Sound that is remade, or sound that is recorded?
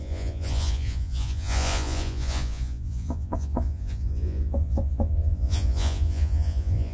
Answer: remade